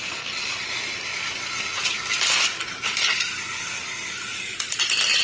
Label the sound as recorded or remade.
recorded